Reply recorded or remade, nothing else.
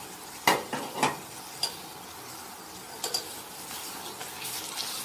recorded